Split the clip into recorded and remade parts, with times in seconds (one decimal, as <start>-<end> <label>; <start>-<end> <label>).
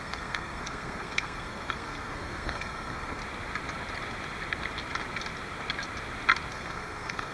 0.0-3.2 remade; 3.2-6.5 recorded; 6.5-7.3 remade